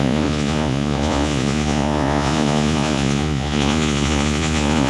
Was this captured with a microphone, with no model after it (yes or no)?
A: no